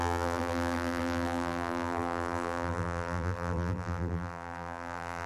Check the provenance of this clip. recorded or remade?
remade